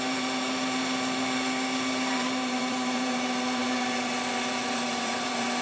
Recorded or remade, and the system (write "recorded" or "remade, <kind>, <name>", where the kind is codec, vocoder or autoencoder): remade, vocoder, BigVGAN v2